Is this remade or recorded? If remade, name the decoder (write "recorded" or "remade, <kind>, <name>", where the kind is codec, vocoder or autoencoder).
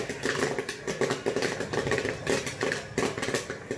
recorded